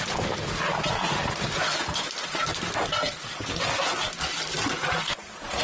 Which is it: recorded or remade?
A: recorded